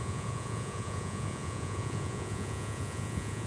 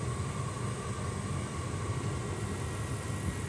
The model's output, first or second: first